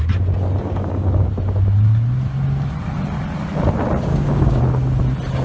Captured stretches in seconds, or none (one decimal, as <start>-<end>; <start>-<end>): 0.0-0.6; 1.3-4.1; 4.6-5.4